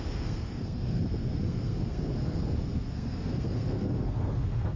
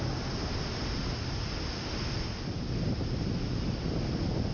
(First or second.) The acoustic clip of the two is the second